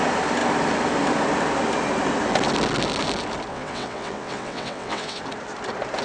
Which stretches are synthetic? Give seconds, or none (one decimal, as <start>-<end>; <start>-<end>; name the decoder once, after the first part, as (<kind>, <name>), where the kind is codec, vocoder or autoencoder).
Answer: 3.5-5.2 (vocoder, WaveNeXt)